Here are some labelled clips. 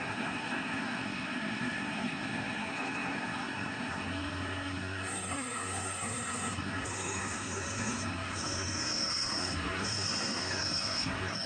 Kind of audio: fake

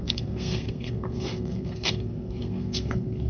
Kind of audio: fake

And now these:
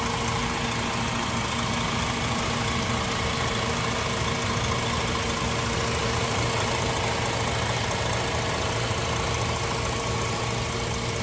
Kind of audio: real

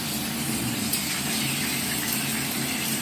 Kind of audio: real